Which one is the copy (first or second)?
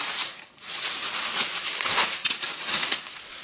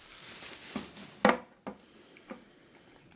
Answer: first